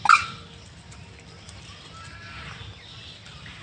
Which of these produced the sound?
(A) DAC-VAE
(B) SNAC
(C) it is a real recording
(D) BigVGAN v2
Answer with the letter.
C